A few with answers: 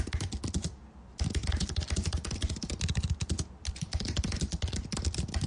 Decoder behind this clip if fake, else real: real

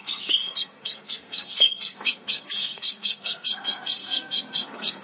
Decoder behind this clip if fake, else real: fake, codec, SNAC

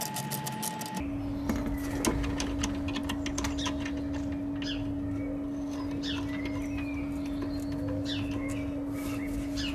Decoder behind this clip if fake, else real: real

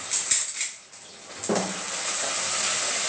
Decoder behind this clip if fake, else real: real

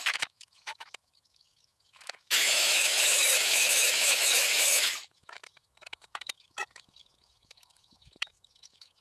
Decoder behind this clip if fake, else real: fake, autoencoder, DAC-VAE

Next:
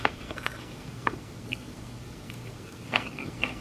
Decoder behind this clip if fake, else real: fake, codec, SNAC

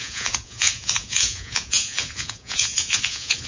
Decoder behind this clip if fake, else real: fake, vocoder, Vocos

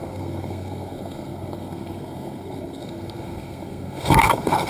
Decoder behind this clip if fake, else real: fake, codec, SNAC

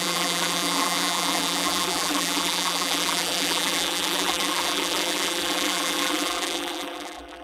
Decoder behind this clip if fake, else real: fake, vocoder, BigVGAN v2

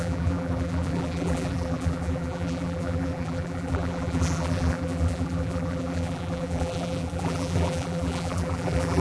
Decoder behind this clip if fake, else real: fake, vocoder, BigVGAN v2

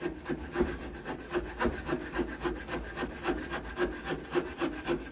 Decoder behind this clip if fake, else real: real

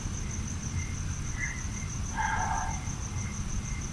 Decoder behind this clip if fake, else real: real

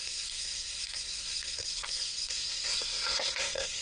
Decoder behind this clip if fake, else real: fake, codec, SNAC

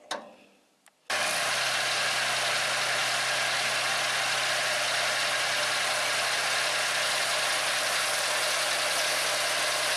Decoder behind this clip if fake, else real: real